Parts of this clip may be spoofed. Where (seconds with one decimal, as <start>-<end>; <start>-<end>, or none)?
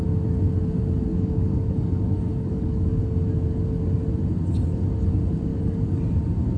1.1-3.0; 5.5-6.0